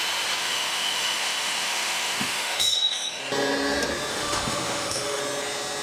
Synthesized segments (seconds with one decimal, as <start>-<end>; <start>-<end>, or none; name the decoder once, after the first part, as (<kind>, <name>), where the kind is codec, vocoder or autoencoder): 0.4-3.2 (autoencoder, DAC-VAE); 4.1-5.2